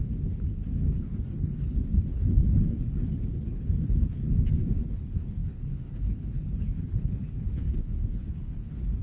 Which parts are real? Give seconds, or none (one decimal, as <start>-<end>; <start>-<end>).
none